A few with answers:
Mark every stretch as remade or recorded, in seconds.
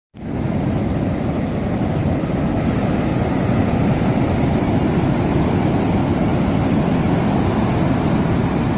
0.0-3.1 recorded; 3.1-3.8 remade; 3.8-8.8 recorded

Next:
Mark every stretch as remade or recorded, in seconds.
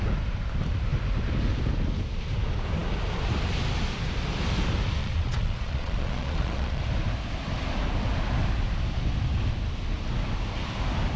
0.0-5.0 recorded; 5.0-6.8 remade; 6.8-11.2 recorded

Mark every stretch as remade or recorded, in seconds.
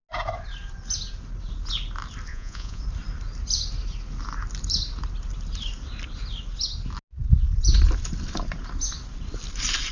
0.0-2.3 recorded; 2.3-2.8 remade; 2.8-9.9 recorded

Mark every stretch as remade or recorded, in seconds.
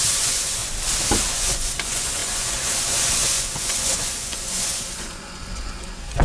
0.0-0.6 remade; 0.6-1.3 recorded; 1.3-6.2 remade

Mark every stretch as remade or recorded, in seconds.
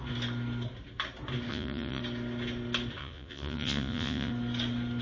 0.0-1.5 recorded; 1.5-2.0 remade; 2.0-3.0 recorded; 3.0-4.3 remade; 4.3-5.0 recorded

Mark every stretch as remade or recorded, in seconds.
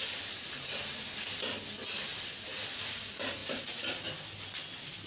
0.0-5.1 recorded